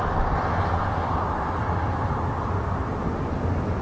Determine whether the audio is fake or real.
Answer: real